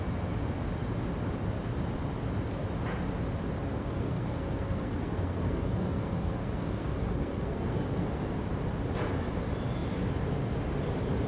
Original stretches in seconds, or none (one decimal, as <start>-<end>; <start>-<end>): 0.0-3.7; 8.3-11.3